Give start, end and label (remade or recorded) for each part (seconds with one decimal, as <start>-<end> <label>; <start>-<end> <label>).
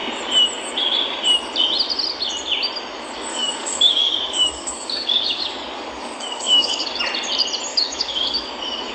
0.0-3.3 recorded; 3.3-7.0 remade; 7.0-7.7 recorded; 7.7-8.5 remade; 8.5-8.9 recorded